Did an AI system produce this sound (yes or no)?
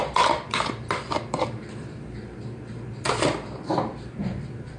yes